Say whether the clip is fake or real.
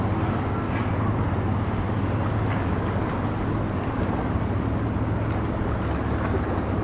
real